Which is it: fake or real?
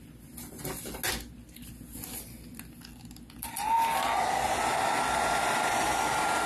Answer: real